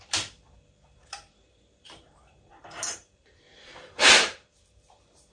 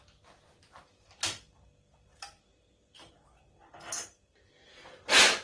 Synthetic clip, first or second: first